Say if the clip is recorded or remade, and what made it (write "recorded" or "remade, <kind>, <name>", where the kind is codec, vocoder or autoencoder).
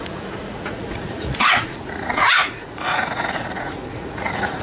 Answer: remade, vocoder, Vocos